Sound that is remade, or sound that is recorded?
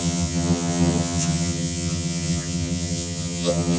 remade